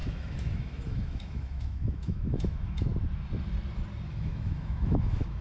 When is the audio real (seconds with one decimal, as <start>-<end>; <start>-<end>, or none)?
2.9-4.1